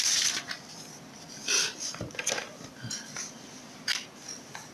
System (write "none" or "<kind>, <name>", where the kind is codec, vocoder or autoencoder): none